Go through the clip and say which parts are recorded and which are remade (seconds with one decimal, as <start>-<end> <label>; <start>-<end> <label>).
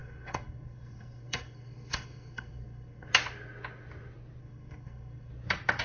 0.0-3.1 remade; 3.1-4.4 recorded; 4.4-5.3 remade; 5.3-5.8 recorded